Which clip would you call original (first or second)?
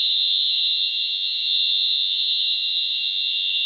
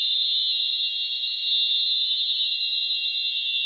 second